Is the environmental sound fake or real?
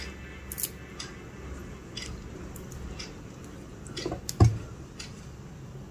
real